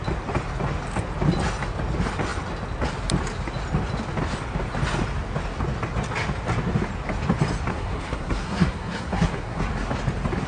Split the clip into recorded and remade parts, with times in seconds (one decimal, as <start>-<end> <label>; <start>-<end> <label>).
0.0-7.7 recorded; 7.7-9.6 remade; 9.6-10.5 recorded